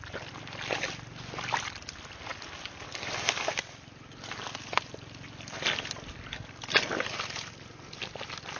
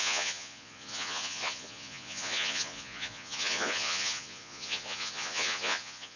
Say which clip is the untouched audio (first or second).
first